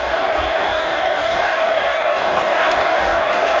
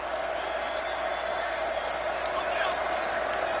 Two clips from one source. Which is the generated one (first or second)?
first